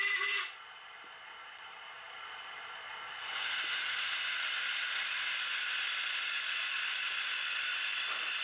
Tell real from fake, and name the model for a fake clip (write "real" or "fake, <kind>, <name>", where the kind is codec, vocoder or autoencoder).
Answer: real